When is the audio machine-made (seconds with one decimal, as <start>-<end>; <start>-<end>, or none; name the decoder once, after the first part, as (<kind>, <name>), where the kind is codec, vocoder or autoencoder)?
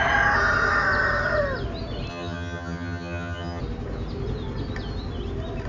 2.1-3.6 (vocoder, HiFi-GAN)